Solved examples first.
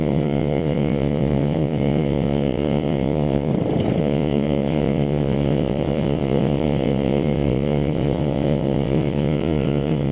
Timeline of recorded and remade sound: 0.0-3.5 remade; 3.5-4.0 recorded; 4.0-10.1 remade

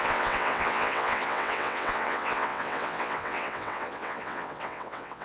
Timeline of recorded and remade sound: 0.0-5.2 remade

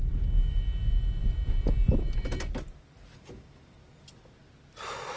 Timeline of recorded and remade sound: 0.0-5.2 recorded